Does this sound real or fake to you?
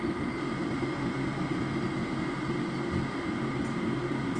real